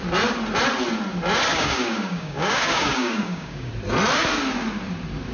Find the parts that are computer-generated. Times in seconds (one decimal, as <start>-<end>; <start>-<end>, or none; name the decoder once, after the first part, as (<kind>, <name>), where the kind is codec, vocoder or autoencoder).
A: 1.5-3.7 (codec, DAC)